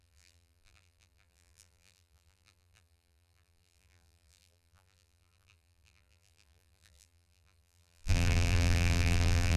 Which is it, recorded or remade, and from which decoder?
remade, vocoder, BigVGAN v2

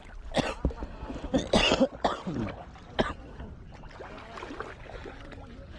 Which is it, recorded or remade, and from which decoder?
recorded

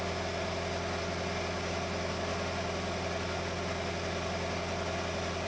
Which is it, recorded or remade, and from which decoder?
recorded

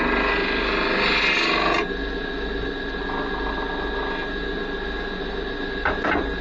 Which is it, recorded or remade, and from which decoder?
recorded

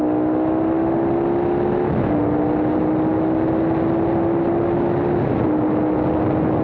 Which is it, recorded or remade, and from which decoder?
recorded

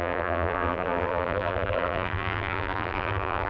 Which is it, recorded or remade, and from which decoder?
remade, vocoder, BigVGAN v2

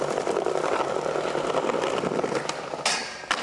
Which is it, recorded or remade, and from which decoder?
recorded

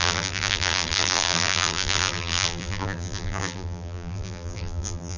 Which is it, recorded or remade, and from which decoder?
remade, vocoder, BigVGAN v2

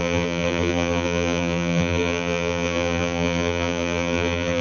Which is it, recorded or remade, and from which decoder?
remade, vocoder, BigVGAN v2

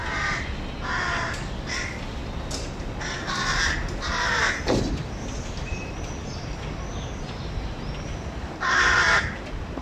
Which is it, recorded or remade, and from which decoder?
recorded